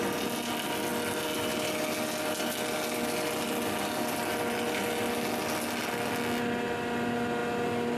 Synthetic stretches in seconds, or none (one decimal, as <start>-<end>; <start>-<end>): none